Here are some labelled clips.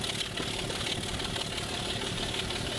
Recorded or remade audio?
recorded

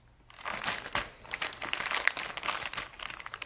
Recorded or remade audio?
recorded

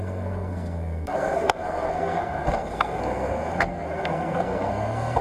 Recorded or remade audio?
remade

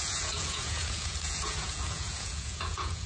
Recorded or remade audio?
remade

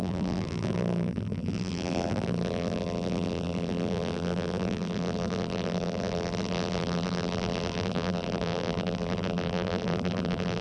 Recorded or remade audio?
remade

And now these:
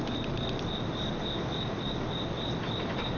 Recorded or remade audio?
recorded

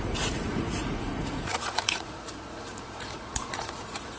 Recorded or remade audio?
remade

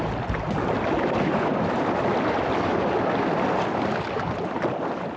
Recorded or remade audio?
recorded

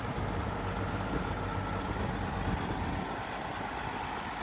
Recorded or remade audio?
remade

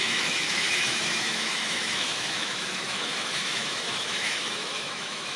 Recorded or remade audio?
remade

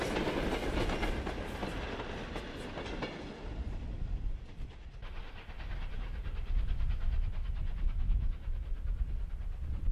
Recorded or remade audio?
recorded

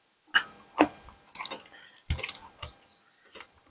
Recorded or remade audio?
recorded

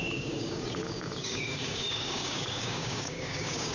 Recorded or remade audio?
remade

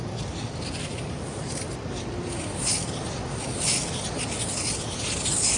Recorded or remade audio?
recorded